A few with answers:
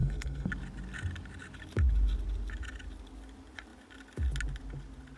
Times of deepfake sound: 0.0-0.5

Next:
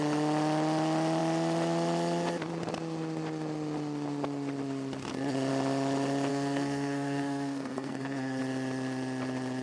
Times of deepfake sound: 6.3-8.4

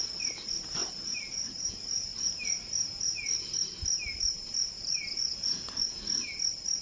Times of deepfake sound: 0.8-1.7; 2.1-6.0

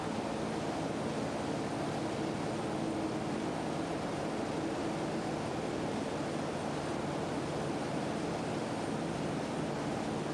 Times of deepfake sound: none

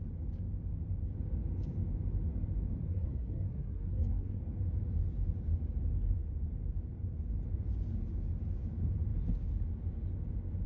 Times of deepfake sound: 2.8-4.4

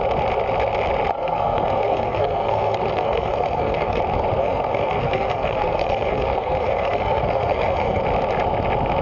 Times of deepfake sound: 1.1-4.0; 4.4-8.0